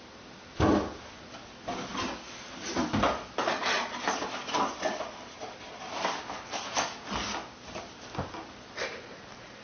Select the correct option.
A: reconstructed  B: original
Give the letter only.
B